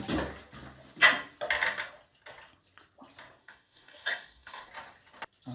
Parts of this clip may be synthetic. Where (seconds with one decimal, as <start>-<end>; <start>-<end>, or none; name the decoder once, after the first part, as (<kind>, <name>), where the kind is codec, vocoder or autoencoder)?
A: 3.4-4.7 (codec, DAC)